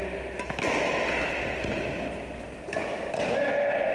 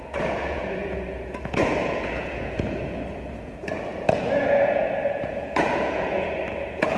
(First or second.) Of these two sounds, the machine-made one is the second